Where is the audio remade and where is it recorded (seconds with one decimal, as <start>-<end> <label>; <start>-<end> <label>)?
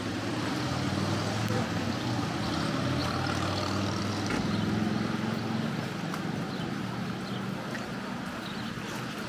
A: 0.0-9.3 recorded